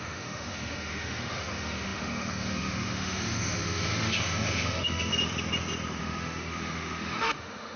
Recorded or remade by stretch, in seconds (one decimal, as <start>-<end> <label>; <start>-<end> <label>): 0.0-5.1 remade; 5.1-6.0 recorded; 6.0-7.8 remade